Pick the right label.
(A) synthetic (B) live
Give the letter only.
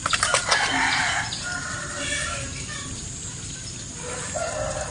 B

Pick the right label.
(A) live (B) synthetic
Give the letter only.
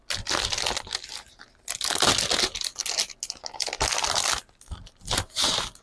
A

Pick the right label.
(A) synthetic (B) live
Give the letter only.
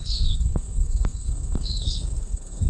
A